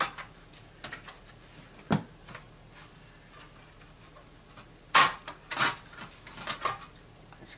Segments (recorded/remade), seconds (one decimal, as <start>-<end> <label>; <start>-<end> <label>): 0.0-7.6 recorded